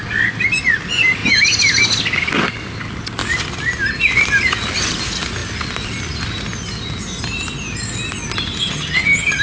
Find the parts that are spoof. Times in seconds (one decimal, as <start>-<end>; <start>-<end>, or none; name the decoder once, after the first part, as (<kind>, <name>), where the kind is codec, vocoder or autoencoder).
8.6-9.4 (vocoder, HiFi-GAN)